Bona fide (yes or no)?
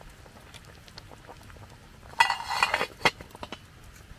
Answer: yes